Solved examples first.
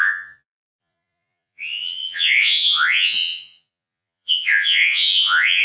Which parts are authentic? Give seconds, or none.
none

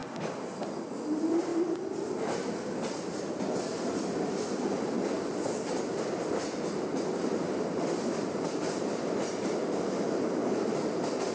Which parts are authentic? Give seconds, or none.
0.0-11.3